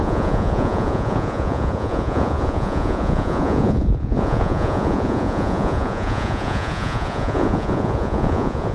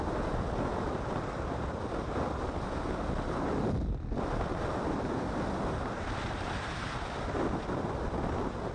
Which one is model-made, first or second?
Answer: first